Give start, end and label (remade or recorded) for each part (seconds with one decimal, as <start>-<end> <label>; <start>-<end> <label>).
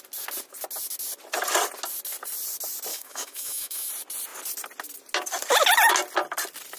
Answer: 0.0-2.9 recorded; 2.9-3.9 remade; 3.9-6.8 recorded